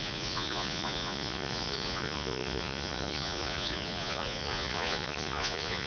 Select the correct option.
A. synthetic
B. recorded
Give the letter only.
A